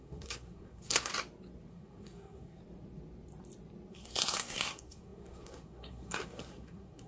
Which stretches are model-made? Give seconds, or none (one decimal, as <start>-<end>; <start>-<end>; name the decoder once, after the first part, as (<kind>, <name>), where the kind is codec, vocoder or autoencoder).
0.0-1.1 (codec, SNAC); 1.7-2.6; 3.9-7.1

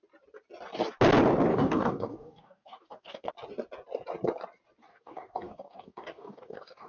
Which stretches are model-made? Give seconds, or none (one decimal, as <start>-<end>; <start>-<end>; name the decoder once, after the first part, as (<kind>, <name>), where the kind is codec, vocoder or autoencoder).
1.5-3.3 (codec, DAC); 4.9-6.9

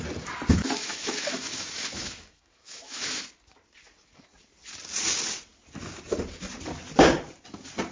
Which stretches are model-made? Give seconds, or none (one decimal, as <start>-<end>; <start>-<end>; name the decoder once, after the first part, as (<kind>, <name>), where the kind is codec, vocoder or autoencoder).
0.5-3.2 (autoencoder, DAC-VAE)

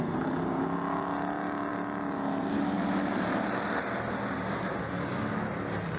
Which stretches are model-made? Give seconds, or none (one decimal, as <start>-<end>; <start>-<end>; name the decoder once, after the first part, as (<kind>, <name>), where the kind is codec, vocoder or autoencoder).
none